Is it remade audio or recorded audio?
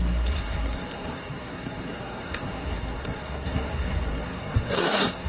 remade